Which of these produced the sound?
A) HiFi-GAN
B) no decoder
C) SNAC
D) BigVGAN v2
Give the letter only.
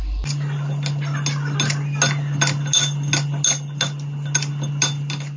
B